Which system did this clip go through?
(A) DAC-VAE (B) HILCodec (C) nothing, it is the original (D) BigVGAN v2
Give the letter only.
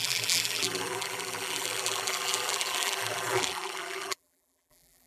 D